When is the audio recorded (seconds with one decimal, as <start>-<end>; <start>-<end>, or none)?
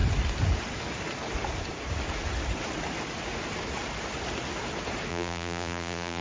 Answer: 0.0-5.1